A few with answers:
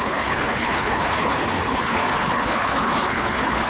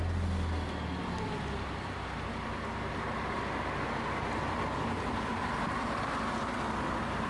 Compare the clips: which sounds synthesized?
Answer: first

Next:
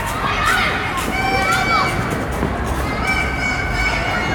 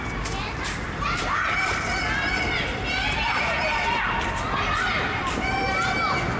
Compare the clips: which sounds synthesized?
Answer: second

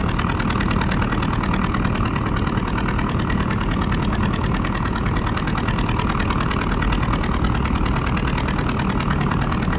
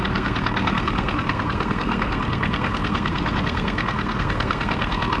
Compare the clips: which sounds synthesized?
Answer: second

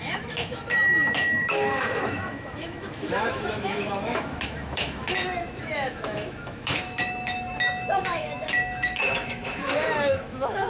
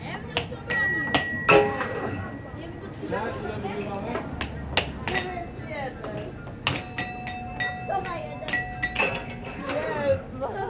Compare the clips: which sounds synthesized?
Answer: first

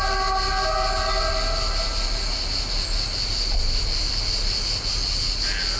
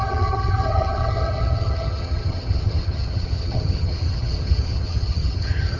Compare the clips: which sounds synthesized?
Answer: second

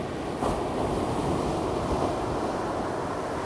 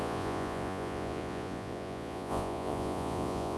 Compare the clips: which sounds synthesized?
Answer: second